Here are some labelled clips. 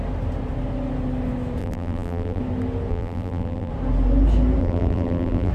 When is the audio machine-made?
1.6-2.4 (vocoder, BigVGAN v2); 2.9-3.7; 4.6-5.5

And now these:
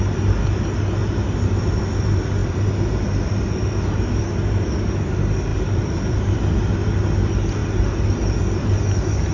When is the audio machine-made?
1.0-1.8 (vocoder, BigVGAN v2); 5.5-6.7

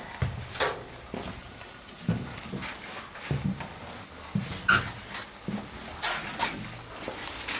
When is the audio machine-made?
1.4-2.4 (vocoder, BigVGAN v2)

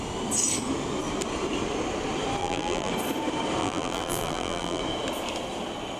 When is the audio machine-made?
2.4-2.9 (vocoder, BigVGAN v2); 3.6-4.8